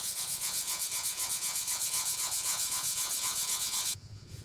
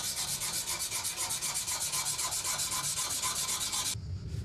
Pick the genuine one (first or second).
second